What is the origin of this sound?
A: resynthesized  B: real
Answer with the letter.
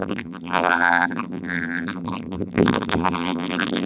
A